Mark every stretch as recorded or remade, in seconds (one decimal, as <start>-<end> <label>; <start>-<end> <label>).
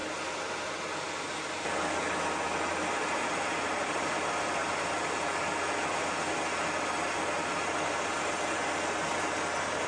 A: 0.0-9.9 recorded